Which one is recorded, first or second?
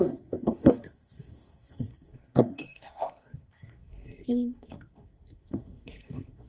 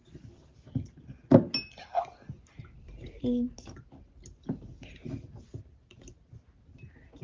second